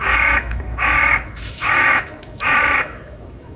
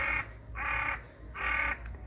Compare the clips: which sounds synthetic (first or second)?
first